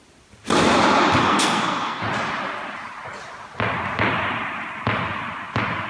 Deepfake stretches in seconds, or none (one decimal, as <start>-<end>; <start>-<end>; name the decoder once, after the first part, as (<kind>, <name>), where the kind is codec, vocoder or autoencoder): 1.2-2.0 (codec, SNAC)